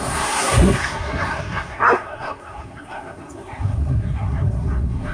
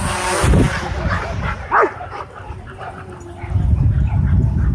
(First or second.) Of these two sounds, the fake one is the first